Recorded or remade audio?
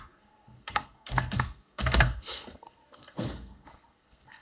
remade